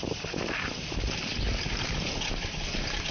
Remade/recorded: recorded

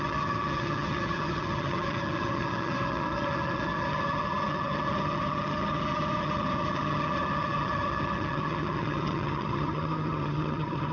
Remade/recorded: remade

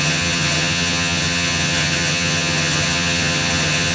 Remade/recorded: remade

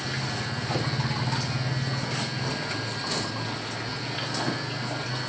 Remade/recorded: recorded